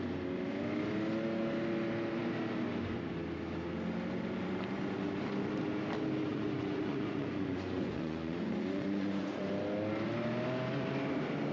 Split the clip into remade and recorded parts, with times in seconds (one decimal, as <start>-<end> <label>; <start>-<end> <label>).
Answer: 0.0-6.3 recorded; 6.3-9.4 remade; 9.4-11.5 recorded